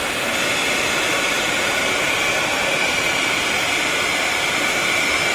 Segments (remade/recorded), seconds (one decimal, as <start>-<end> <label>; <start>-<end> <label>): 0.0-1.1 recorded; 1.1-4.0 remade; 4.0-5.3 recorded